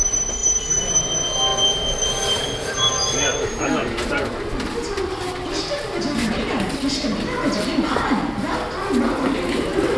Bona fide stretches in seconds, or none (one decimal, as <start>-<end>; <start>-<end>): 0.0-0.4; 0.9-1.5; 2.9-10.0